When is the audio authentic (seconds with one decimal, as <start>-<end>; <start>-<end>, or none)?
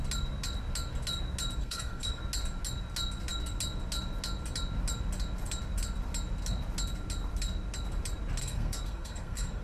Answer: 0.0-1.6; 2.2-8.4